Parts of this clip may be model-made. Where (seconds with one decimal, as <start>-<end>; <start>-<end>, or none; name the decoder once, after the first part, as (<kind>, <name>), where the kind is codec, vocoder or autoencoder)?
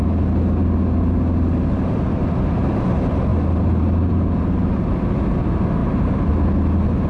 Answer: 3.3-4.9 (vocoder, BigVGAN v2); 5.8-6.3